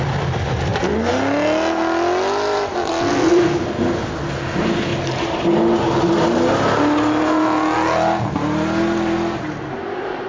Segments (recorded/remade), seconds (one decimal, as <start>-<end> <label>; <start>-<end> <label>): 0.0-10.3 recorded